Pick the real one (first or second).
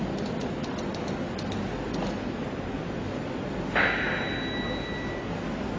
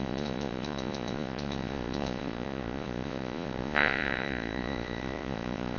first